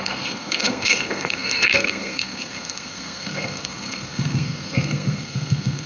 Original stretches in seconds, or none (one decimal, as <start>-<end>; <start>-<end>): none